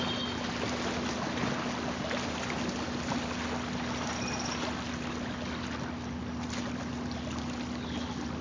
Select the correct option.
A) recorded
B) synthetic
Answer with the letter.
A